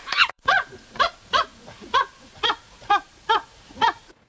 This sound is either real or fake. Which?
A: fake